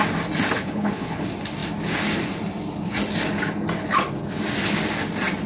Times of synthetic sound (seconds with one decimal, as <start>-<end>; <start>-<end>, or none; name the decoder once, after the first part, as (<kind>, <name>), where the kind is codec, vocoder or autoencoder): 0.6-1.2 (codec, HILCodec)